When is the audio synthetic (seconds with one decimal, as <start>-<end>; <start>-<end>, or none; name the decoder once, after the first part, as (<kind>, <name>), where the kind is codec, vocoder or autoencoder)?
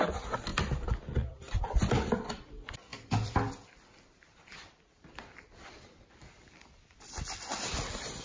0.5-2.1 (vocoder, BigVGAN v2); 2.9-7.1